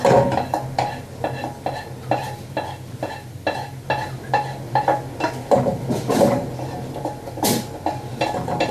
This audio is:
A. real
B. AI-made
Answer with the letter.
A